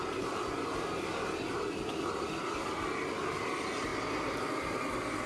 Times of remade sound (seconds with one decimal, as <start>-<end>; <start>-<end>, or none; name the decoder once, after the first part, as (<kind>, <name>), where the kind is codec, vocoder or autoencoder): none